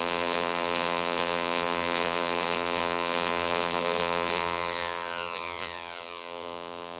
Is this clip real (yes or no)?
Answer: no